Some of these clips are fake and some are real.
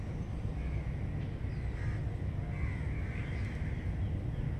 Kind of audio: real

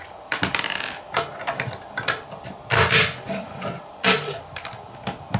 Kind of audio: real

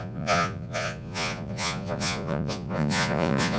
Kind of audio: fake